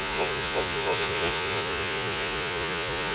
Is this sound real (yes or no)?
no